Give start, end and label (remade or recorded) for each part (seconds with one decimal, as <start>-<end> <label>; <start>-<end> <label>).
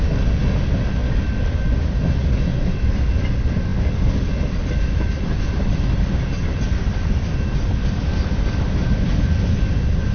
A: 0.0-10.1 recorded